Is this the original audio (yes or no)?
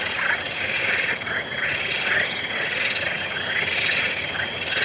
yes